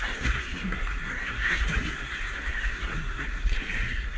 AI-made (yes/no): yes